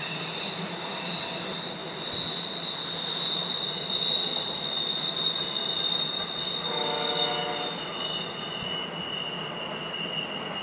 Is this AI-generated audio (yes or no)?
no